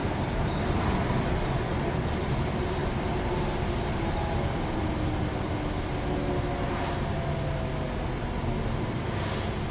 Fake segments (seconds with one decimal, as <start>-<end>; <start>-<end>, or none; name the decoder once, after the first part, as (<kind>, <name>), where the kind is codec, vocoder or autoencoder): 0.0-0.8 (vocoder, BigVGAN v2); 2.8-3.4